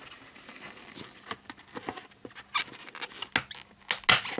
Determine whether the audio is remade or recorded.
recorded